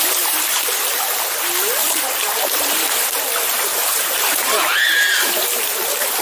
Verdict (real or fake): fake